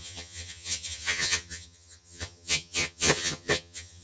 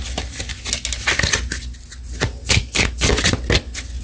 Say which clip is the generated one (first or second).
first